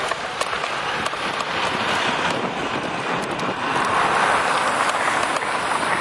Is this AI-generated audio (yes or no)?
no